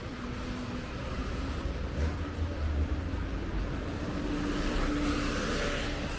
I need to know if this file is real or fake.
real